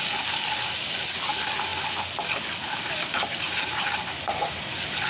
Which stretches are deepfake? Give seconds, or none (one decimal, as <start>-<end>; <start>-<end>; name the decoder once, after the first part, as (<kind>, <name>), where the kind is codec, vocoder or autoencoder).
none